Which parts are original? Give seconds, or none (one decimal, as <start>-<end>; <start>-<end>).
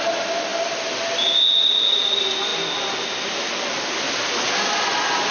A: 0.0-5.3